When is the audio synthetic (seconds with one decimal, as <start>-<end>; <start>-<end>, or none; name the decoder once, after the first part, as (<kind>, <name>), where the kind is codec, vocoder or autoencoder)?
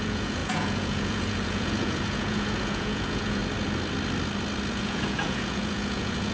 0.0-3.4 (vocoder, Vocos); 4.7-6.3